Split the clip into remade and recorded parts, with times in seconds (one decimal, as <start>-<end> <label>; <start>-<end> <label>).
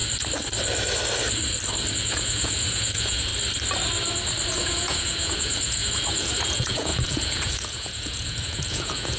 0.0-1.9 recorded; 1.9-3.3 remade; 3.3-4.5 recorded; 4.5-9.2 remade